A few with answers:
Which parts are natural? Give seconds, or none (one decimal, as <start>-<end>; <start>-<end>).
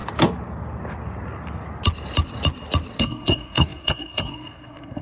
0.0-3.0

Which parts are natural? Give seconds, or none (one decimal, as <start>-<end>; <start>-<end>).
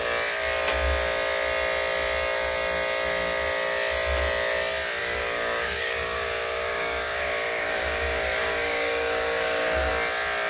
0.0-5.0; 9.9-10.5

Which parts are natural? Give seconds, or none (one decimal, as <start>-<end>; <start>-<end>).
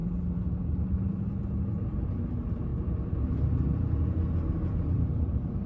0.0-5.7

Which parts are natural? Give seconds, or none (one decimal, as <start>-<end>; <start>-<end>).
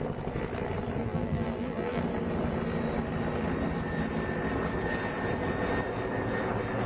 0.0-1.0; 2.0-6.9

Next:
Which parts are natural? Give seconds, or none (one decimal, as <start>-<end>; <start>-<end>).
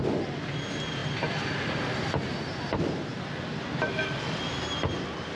0.0-1.0; 3.2-5.4